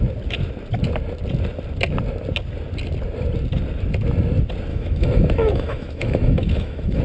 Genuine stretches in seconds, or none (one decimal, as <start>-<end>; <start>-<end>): 0.0-4.7